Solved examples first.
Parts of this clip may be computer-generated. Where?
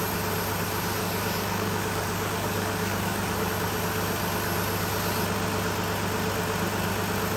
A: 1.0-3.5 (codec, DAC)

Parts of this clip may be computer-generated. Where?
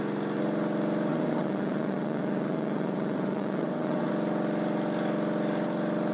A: 1.1-4.1 (vocoder, WaveNeXt)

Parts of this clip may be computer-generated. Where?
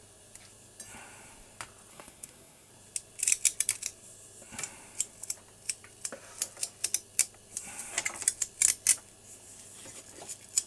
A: 1.9-2.7 (codec, SNAC)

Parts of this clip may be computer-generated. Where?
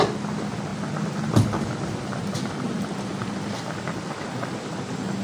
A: none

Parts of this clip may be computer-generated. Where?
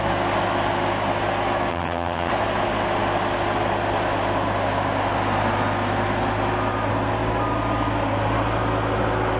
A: 1.7-2.3 (vocoder, HiFi-GAN)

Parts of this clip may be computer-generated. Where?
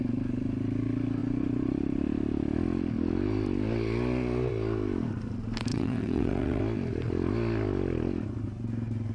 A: 5.7-6.6 (vocoder, WaveNeXt)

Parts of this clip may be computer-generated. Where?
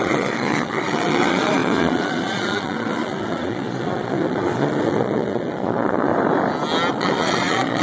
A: 0.0-6.1 (vocoder, Vocos); 6.9-7.8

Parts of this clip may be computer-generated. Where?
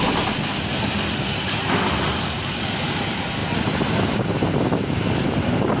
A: none